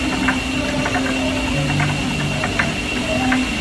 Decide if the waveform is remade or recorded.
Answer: recorded